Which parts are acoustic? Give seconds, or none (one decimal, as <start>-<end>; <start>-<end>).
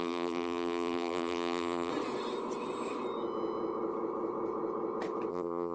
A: 1.9-5.3